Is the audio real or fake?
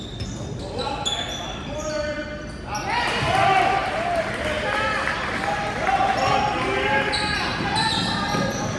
real